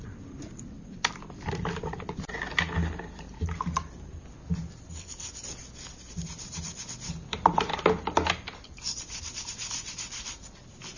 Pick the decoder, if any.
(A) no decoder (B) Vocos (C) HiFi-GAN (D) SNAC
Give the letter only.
A